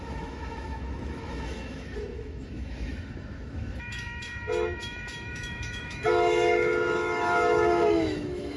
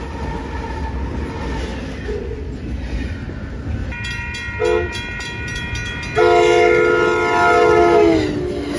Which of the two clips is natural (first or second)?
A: second